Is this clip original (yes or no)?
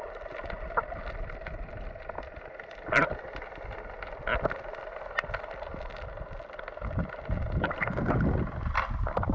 yes